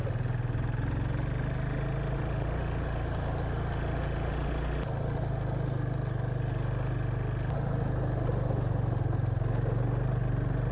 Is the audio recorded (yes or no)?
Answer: yes